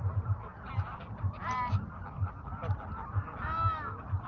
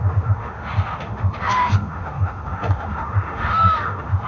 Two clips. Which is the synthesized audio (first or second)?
second